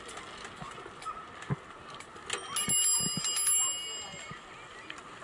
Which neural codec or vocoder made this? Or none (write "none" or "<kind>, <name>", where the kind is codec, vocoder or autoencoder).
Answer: none